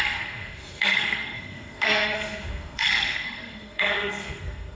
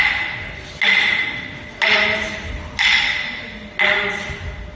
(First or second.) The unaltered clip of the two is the second